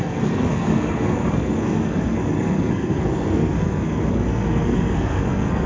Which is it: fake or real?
fake